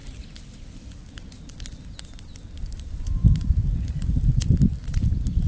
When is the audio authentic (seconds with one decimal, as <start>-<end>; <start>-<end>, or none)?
3.6-4.9